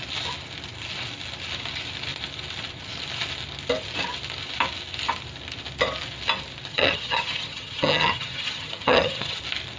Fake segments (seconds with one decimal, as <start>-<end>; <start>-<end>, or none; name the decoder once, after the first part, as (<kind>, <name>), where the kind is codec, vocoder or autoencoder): 6.7-9.4 (vocoder, HiFi-GAN)